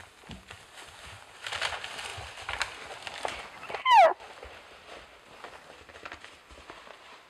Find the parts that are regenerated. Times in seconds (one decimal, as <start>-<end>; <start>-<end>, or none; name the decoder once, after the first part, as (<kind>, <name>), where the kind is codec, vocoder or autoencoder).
none